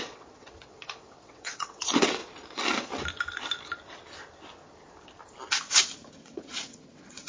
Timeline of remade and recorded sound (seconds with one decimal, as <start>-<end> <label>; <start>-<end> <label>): 0.0-2.2 remade; 2.2-6.2 recorded; 6.2-7.3 remade